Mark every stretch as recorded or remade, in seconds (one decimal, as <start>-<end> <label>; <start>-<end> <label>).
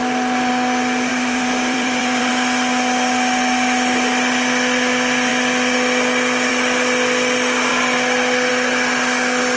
0.0-1.1 recorded; 1.1-2.3 remade; 2.3-9.6 recorded